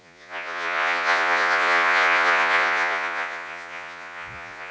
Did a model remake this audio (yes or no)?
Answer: yes